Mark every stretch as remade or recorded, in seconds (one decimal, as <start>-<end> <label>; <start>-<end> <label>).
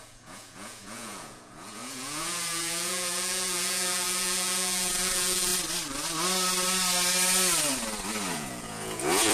0.0-5.5 remade; 5.5-8.3 recorded; 8.3-9.3 remade